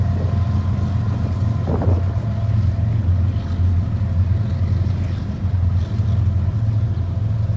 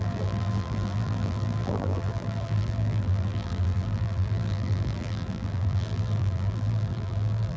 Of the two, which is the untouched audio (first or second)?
first